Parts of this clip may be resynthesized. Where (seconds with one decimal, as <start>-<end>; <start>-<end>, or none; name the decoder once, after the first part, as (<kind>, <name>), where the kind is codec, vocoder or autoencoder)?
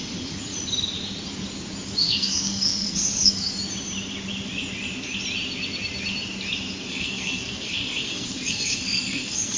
2.0-3.6 (codec, SNAC); 6.9-9.6